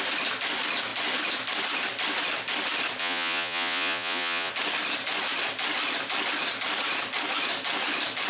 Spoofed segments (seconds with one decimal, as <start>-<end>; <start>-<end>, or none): 3.0-4.5